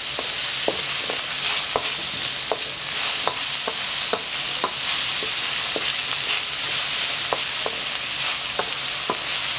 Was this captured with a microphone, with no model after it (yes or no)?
yes